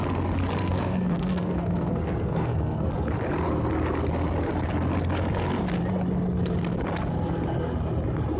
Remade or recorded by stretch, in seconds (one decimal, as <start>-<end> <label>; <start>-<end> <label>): 0.0-0.6 recorded; 0.6-2.9 remade; 2.9-8.4 recorded